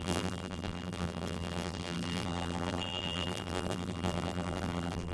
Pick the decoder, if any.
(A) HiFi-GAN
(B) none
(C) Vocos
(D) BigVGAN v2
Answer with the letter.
D